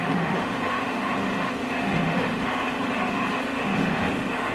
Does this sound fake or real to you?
fake